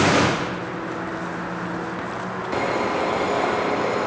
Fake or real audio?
real